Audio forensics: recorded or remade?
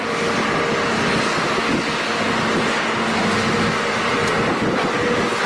recorded